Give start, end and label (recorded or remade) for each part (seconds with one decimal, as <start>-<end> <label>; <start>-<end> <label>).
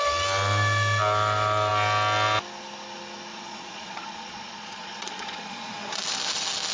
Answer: 0.0-3.3 recorded; 3.3-5.7 remade; 5.7-6.7 recorded